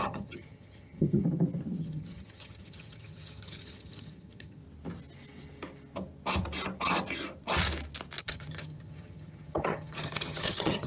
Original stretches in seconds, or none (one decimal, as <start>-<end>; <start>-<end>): 1.2-1.8; 4.6-8.2